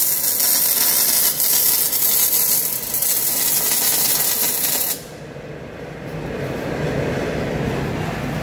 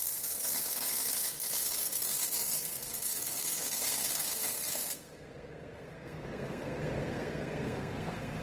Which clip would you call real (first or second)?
first